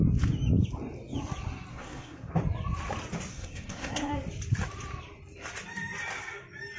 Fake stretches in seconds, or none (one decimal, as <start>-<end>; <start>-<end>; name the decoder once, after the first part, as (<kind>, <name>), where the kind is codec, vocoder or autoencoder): 1.7-2.3 (codec, SNAC); 3.3-4.1

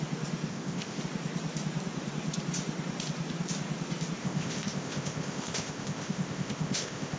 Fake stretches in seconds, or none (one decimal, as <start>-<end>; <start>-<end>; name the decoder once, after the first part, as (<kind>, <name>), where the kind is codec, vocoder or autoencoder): 0.5-1.0 (codec, ZipCodec); 4.2-7.2

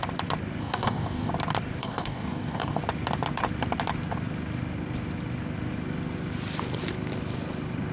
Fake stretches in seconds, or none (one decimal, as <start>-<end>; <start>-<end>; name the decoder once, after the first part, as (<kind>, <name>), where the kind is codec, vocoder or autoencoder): 0.6-1.3 (codec, DAC); 1.8-2.8